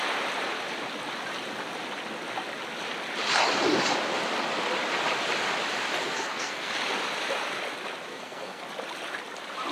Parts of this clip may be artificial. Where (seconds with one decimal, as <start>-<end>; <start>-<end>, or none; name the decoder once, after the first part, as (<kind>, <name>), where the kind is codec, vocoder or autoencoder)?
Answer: 6.0-6.7 (codec, SNAC); 8.1-8.6